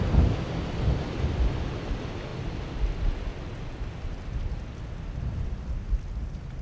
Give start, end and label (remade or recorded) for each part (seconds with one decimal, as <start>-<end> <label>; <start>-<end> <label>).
0.0-6.6 recorded